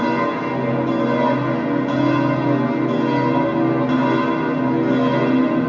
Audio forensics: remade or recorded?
recorded